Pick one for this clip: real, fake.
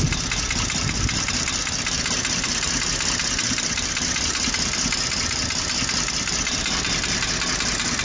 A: real